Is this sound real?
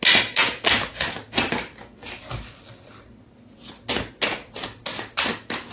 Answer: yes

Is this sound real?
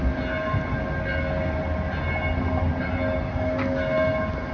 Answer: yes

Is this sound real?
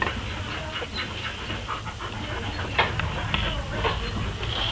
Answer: yes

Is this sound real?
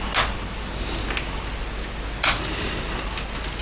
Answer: yes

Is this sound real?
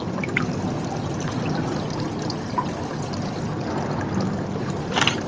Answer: yes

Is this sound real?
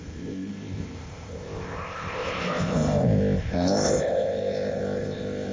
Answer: no